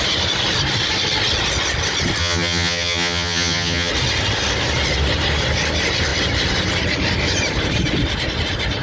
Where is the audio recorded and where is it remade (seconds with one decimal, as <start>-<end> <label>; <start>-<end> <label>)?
0.0-2.2 recorded; 2.2-3.9 remade; 3.9-8.8 recorded